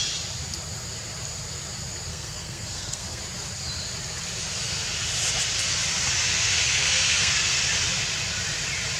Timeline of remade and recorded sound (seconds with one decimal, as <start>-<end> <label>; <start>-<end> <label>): 0.0-2.1 recorded; 2.1-3.2 remade; 3.2-6.3 recorded; 6.3-7.6 remade; 7.6-9.0 recorded